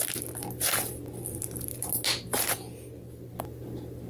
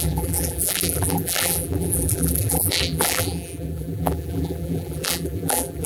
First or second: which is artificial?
second